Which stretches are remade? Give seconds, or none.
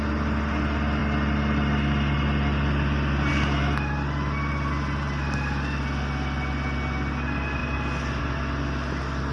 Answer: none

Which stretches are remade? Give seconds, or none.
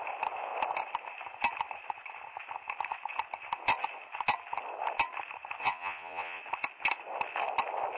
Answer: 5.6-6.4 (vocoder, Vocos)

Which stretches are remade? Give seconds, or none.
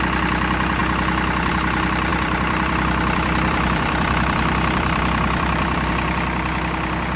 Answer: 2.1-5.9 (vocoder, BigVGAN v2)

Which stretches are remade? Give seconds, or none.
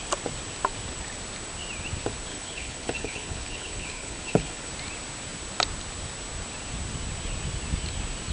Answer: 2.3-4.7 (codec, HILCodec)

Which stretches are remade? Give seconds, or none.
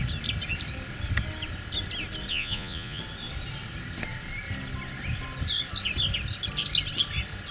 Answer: 2.3-3.0 (vocoder, Vocos)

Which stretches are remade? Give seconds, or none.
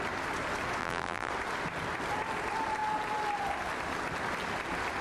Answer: 0.8-1.3 (vocoder, BigVGAN v2)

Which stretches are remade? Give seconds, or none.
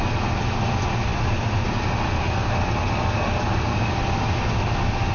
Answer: none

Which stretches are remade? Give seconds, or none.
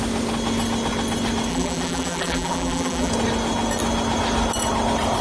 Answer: 1.5-3.1 (vocoder, BigVGAN v2)